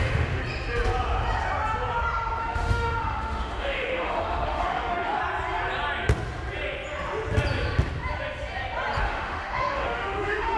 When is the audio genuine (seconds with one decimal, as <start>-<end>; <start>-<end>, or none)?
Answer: 0.4-2.4; 5.2-9.0